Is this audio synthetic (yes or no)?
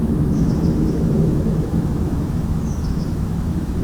yes